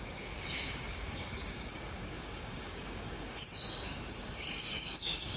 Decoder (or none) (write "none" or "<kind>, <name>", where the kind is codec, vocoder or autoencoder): codec, DAC